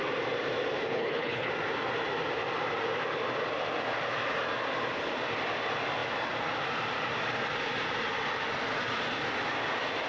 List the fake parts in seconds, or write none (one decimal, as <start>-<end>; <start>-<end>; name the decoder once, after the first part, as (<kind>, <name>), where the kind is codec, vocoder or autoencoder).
0.9-1.5 (codec, HILCodec)